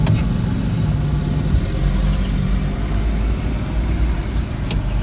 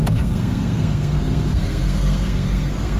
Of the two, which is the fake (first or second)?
second